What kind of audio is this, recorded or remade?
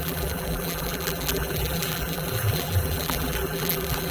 remade